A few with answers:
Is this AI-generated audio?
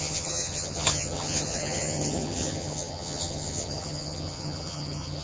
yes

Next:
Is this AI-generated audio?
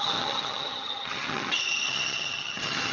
yes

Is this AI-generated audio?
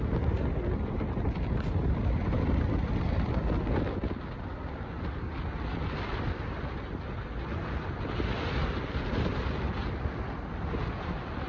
no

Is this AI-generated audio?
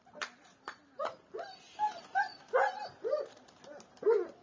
no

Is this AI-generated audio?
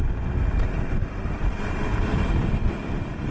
no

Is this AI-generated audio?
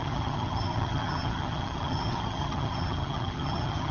yes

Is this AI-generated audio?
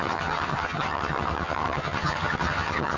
yes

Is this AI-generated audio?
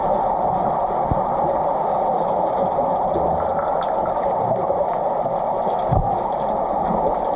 no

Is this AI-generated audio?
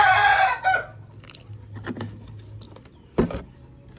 no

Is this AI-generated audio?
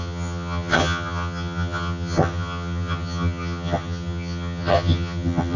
yes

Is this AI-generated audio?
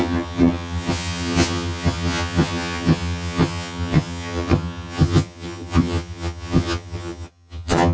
yes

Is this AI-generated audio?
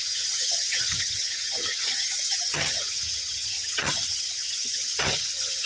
yes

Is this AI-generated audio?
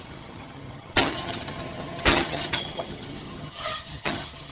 yes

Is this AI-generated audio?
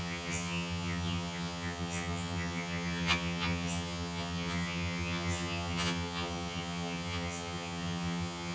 yes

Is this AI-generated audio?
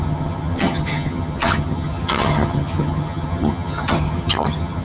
yes